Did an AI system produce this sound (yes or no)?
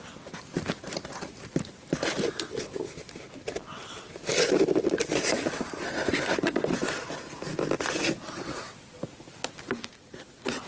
no